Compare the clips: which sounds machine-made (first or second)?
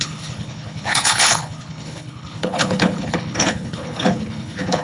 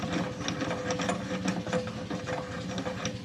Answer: first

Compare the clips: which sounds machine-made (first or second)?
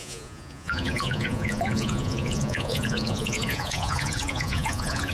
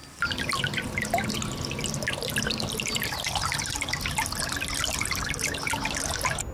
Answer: first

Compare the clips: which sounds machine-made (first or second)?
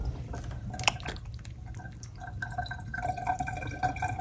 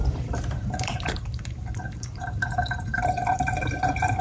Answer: second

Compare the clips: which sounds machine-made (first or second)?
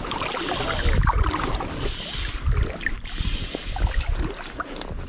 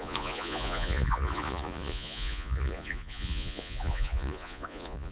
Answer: second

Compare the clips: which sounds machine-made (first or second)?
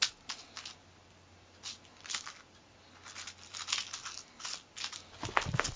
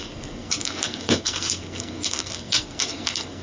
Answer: second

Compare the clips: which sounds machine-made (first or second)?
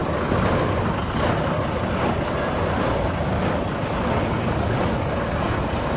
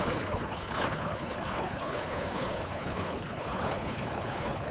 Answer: second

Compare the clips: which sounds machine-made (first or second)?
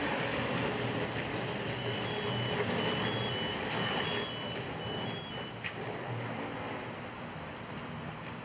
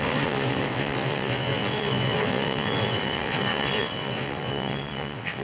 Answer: second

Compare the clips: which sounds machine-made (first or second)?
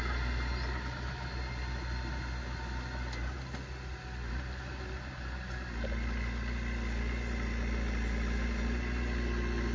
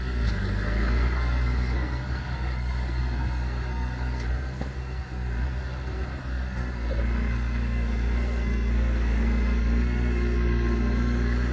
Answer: second